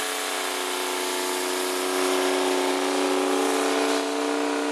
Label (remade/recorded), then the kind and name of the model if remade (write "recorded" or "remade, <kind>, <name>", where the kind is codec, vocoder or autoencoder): recorded